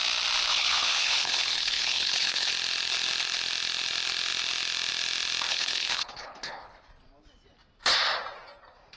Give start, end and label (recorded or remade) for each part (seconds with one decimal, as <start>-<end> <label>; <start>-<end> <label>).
0.0-0.5 recorded; 0.5-2.5 remade; 2.5-5.5 recorded; 5.5-6.9 remade; 6.9-9.0 recorded